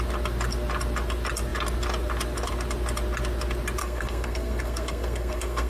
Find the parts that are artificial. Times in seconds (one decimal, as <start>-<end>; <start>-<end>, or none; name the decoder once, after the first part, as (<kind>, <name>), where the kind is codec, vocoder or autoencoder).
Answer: 3.8-5.7 (codec, SNAC)